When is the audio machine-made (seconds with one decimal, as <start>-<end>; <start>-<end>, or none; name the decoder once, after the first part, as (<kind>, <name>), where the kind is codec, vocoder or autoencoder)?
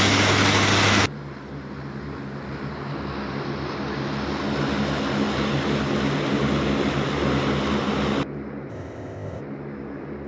8.7-9.4 (codec, ZipCodec)